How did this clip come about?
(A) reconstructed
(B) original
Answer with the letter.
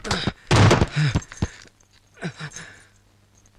B